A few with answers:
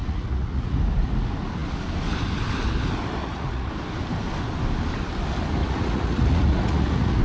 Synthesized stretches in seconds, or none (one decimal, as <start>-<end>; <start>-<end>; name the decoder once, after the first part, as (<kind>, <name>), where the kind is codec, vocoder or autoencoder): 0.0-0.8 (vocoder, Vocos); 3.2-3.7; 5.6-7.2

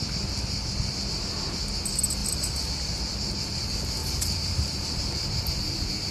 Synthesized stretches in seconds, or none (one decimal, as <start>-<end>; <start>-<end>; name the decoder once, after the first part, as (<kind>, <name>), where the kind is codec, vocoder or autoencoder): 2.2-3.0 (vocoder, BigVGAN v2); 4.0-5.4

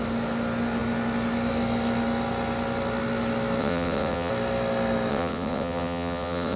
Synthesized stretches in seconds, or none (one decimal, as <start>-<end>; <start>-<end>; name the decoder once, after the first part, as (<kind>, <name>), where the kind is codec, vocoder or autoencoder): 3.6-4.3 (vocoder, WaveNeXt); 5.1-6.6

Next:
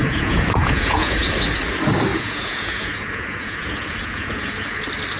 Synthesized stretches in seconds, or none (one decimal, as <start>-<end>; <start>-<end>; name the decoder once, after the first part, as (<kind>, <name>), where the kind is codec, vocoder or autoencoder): 0.0-1.3 (vocoder, Vocos); 2.1-4.8